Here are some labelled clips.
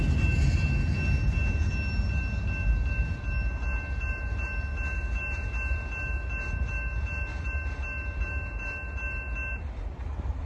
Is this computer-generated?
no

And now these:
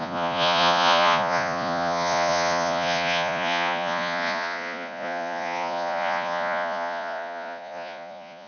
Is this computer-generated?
yes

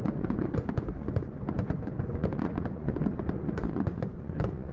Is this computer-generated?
yes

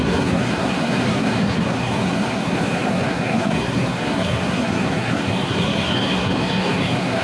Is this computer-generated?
yes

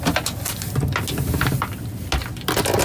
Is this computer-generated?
no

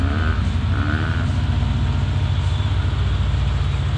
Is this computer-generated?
no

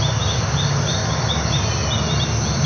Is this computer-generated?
no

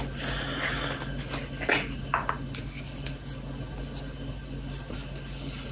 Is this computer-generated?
no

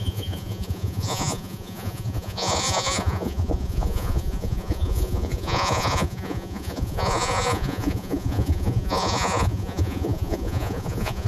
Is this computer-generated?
yes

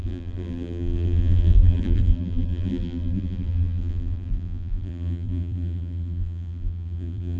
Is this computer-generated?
yes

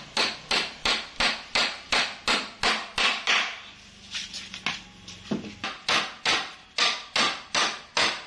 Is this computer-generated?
no